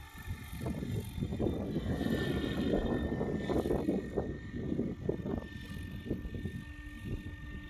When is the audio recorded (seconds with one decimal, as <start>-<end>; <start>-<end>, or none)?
0.0-7.7